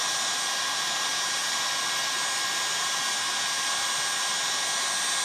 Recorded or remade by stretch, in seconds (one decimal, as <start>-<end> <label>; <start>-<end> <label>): 0.0-5.2 recorded

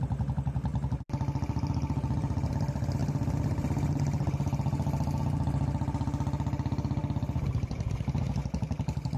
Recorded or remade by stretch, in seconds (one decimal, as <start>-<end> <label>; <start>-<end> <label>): 0.0-9.2 recorded

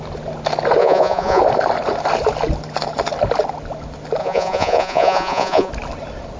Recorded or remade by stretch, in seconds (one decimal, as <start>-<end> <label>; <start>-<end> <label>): 0.0-0.8 recorded; 0.8-1.4 remade; 1.4-4.2 recorded; 4.2-5.7 remade; 5.7-6.4 recorded

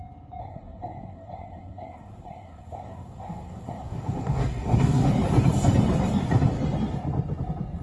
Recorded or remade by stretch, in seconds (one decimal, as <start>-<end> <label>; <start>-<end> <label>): 0.0-0.4 recorded; 0.4-5.1 remade; 5.1-7.8 recorded

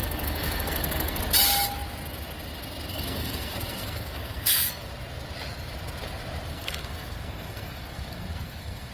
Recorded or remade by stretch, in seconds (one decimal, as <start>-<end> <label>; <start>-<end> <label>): 0.0-1.2 remade; 1.2-2.9 recorded; 2.9-4.7 remade; 4.7-6.5 recorded; 6.5-8.9 remade

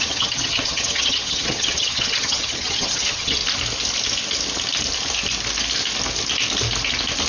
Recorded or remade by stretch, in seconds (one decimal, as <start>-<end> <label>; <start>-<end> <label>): 0.0-3.4 remade; 3.4-7.3 recorded

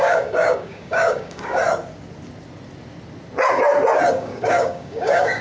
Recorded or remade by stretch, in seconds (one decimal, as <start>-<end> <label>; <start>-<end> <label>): 0.0-1.6 remade; 1.6-4.1 recorded; 4.1-5.4 remade

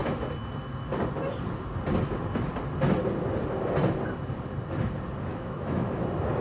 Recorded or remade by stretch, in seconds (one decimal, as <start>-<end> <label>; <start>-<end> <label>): 0.0-5.3 recorded; 5.3-6.0 remade; 6.0-6.4 recorded